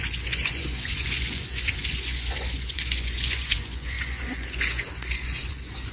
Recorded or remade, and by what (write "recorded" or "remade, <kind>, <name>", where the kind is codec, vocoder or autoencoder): remade, vocoder, Vocos